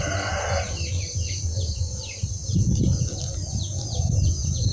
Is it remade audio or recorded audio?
recorded